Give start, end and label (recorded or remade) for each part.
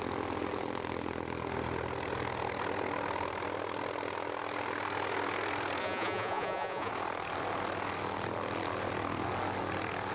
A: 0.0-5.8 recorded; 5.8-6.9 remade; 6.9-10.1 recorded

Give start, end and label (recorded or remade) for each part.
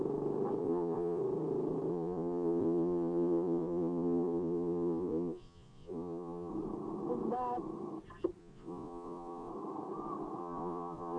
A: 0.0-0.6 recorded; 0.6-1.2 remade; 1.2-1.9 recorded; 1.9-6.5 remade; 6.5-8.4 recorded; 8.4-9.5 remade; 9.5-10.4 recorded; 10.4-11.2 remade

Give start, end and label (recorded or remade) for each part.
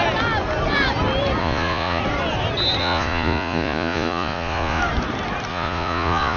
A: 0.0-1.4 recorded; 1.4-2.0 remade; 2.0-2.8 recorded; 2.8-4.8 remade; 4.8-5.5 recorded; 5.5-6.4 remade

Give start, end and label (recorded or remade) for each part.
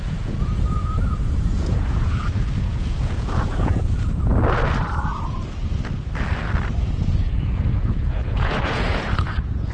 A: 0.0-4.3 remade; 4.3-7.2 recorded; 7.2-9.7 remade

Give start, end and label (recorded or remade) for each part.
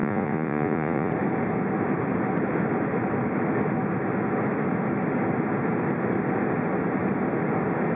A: 0.0-1.1 remade; 1.1-7.9 recorded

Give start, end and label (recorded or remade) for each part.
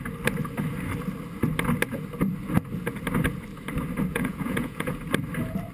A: 0.0-4.1 recorded; 4.1-5.0 remade; 5.0-5.7 recorded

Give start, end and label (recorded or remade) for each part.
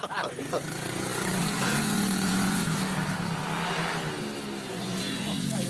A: 0.0-2.6 remade; 2.6-4.7 recorded; 4.7-5.7 remade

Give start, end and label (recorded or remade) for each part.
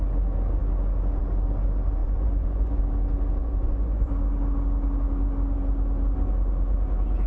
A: 0.0-2.0 recorded; 2.0-2.8 remade; 2.8-3.4 recorded; 3.4-4.1 remade; 4.1-7.3 recorded